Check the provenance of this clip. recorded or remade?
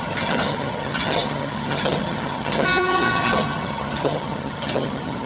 remade